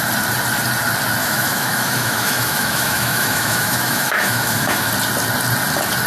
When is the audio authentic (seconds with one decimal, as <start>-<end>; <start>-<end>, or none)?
0.0-1.2; 4.9-6.1